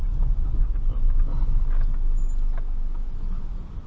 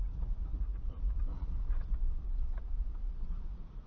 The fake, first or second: second